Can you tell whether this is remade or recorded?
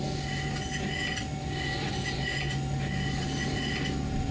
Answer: recorded